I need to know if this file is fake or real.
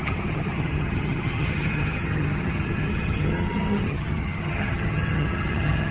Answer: fake